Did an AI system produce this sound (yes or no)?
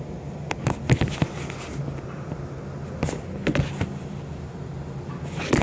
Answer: no